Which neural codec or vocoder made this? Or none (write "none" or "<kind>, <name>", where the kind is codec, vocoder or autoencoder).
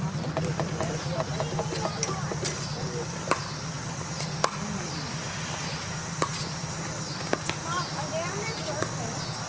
none